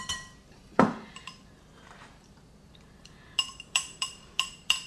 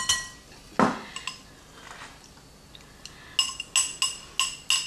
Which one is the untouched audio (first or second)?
second